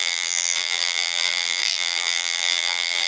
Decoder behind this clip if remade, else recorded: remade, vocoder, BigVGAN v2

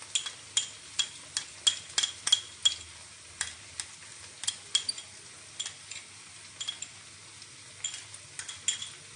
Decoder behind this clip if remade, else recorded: recorded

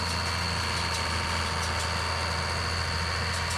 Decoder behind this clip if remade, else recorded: recorded